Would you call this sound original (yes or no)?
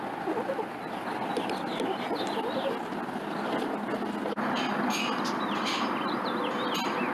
yes